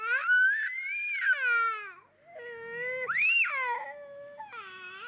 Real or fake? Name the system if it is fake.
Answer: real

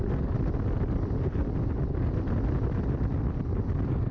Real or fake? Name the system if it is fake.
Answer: real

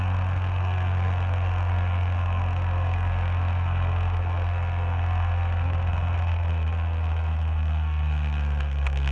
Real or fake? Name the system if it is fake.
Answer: fake, codec, SNAC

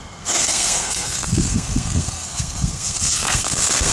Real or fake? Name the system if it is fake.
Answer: fake, codec, SNAC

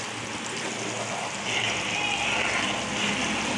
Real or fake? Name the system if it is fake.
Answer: real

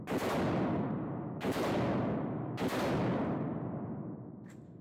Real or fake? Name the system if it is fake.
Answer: real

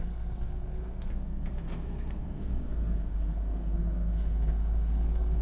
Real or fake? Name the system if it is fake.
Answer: fake, codec, SNAC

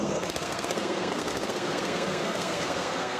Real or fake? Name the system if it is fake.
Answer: fake, codec, SNAC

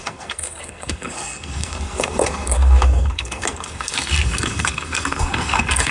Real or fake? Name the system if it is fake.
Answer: fake, codec, SNAC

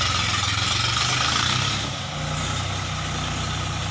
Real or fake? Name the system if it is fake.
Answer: real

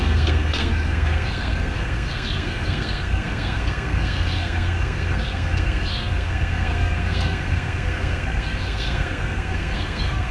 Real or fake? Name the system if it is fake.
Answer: fake, codec, SNAC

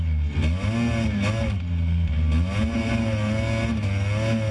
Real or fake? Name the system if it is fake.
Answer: real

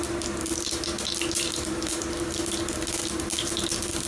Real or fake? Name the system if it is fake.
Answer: real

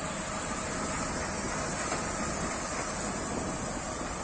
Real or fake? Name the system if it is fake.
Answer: real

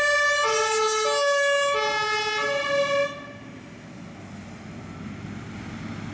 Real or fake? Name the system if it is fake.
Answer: real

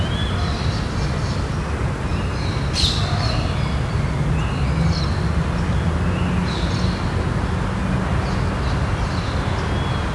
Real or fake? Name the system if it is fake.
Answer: real